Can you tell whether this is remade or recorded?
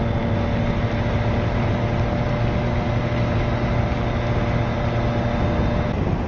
recorded